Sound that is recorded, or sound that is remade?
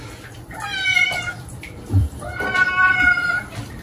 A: remade